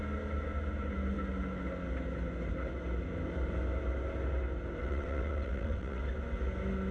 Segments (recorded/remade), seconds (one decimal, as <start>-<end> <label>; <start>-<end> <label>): 0.0-4.8 recorded; 4.8-6.0 remade; 6.0-6.9 recorded